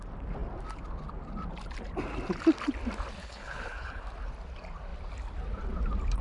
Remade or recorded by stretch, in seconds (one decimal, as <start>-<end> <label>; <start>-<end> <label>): 0.0-3.2 recorded; 3.2-4.0 remade; 4.0-6.2 recorded